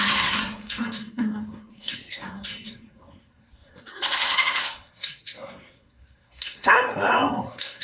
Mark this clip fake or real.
fake